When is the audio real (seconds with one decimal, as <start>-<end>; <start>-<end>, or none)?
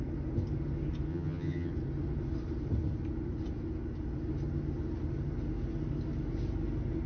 0.0-1.1; 1.7-7.1